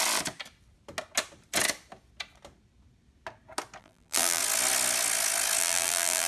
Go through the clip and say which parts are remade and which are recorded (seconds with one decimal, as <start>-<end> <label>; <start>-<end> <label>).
0.0-3.8 recorded; 3.8-4.4 remade; 4.4-5.6 recorded; 5.6-6.3 remade